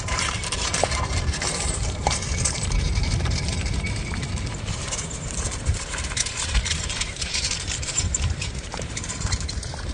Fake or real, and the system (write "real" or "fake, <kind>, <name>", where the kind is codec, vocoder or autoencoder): fake, vocoder, BigVGAN v2